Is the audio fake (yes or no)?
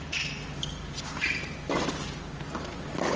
no